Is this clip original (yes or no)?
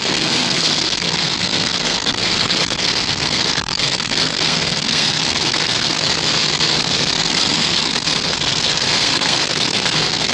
no